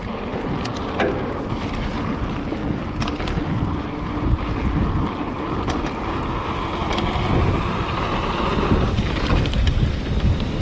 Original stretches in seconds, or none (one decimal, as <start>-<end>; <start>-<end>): 0.0-10.6